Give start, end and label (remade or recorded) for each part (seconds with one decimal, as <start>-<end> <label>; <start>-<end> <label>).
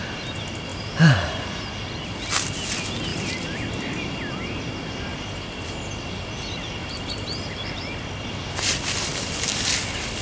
0.0-0.7 recorded; 0.7-1.6 remade; 1.6-3.1 recorded; 3.1-3.6 remade; 3.6-6.8 recorded; 6.8-8.0 remade; 8.0-10.2 recorded